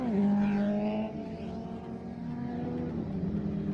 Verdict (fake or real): real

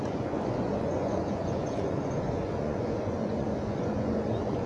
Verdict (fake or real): fake